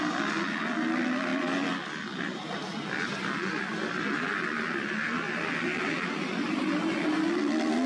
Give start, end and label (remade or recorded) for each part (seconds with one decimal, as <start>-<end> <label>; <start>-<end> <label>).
0.0-7.9 recorded